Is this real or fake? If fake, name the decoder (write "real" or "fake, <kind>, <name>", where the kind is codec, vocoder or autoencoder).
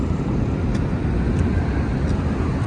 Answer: real